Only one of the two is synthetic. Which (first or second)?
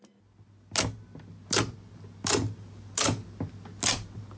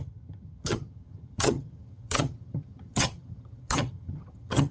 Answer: second